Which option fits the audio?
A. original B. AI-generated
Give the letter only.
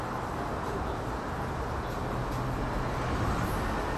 A